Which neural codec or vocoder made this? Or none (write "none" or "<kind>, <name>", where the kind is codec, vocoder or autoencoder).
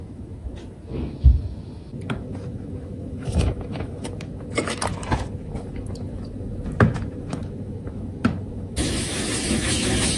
autoencoder, DAC-VAE